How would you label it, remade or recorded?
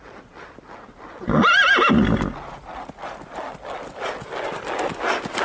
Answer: recorded